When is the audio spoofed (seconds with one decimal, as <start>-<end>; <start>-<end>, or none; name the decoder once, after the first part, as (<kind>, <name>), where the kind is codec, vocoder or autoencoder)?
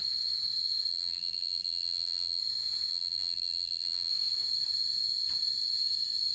0.9-2.4 (vocoder, BigVGAN v2); 2.9-4.1